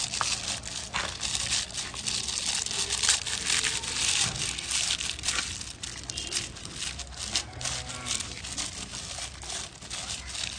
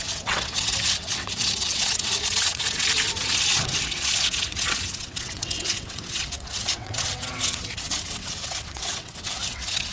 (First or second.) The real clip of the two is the first